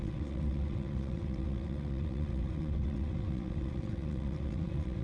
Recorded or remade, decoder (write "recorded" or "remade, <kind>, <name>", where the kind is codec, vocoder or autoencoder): remade, vocoder, WaveNeXt